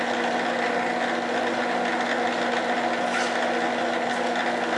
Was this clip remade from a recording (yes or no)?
no